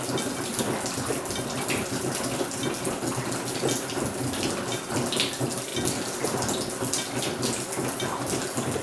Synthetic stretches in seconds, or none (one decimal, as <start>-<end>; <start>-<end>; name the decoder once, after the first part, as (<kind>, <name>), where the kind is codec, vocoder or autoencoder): none